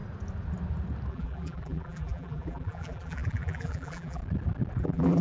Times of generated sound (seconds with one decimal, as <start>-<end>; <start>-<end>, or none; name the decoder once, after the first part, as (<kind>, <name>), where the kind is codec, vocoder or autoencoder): 1.1-4.2 (vocoder, BigVGAN v2); 4.8-5.2